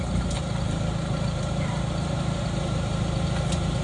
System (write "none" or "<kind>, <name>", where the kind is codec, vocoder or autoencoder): vocoder, BigVGAN v2